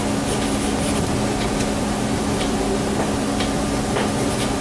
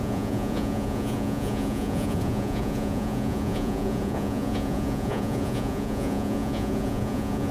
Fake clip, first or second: second